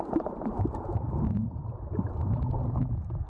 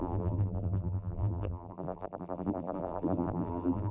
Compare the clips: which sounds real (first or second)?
first